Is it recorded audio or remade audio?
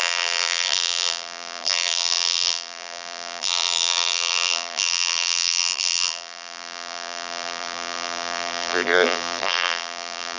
remade